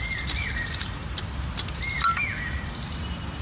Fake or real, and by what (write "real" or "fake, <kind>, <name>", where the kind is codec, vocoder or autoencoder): real